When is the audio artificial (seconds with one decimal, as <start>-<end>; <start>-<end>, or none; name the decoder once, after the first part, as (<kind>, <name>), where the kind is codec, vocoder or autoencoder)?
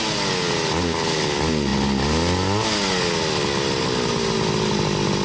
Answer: none